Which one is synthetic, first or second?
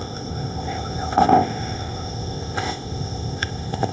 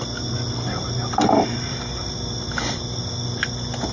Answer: first